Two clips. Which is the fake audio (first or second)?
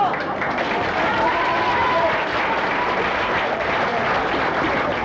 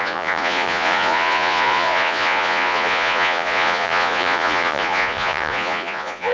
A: second